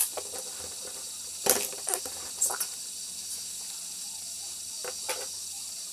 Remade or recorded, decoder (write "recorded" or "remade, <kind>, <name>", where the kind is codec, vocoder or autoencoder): recorded